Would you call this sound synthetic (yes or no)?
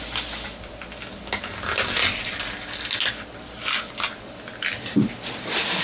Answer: no